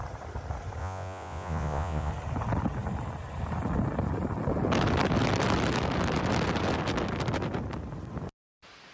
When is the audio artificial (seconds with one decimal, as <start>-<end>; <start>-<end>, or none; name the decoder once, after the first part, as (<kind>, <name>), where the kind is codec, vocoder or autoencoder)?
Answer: 0.8-2.1 (vocoder, Vocos)